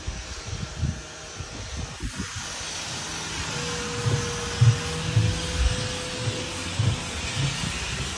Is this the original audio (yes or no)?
yes